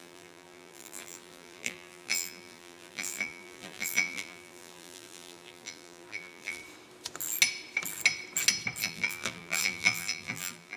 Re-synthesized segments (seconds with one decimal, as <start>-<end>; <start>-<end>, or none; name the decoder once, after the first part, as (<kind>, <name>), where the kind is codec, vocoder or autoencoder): 0.0-6.6 (vocoder, BigVGAN v2); 8.8-10.8